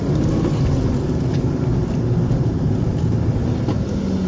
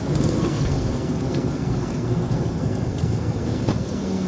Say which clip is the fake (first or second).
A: second